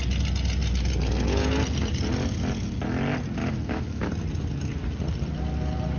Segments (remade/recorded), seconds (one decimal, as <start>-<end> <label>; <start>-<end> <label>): 0.0-3.4 recorded; 3.4-4.1 remade; 4.1-6.0 recorded